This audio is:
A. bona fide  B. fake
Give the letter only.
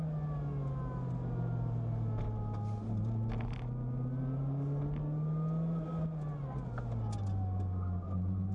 A